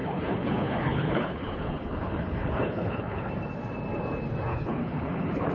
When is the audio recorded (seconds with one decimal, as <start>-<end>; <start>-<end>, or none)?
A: 3.3-4.5